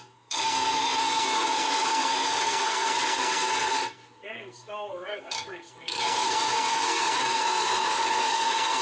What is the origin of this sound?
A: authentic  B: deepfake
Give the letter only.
B